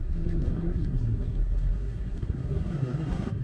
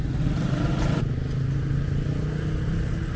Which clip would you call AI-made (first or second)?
first